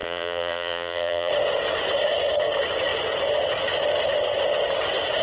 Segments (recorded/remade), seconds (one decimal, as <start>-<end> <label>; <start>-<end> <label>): 0.0-1.3 remade; 1.3-5.2 recorded